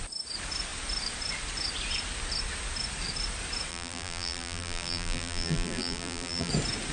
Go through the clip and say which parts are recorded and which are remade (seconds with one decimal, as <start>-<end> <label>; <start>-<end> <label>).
0.0-3.7 recorded; 3.7-6.5 remade; 6.5-6.9 recorded